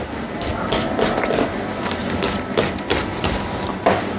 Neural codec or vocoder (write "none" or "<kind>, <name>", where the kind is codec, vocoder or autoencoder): none